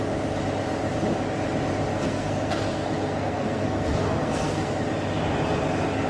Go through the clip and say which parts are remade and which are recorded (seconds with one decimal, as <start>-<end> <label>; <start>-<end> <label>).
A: 0.0-1.9 recorded; 1.9-4.7 remade; 4.7-6.1 recorded